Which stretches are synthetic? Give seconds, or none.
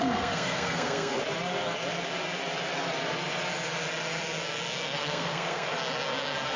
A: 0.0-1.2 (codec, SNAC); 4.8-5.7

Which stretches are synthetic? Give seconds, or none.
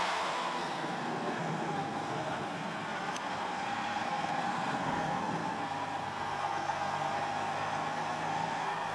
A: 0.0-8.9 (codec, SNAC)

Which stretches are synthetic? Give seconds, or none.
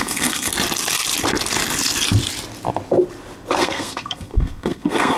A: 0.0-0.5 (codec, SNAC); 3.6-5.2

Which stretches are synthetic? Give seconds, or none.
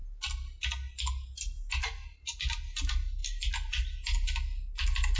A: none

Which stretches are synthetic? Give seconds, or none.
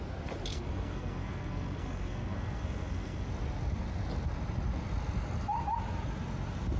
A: 0.5-3.3 (codec, SNAC)